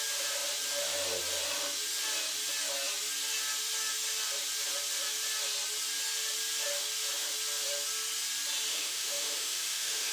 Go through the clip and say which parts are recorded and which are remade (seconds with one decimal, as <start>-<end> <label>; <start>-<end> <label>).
0.0-8.7 recorded; 8.7-10.1 remade